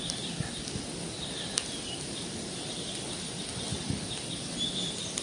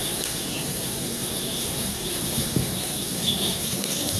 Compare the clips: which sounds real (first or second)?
first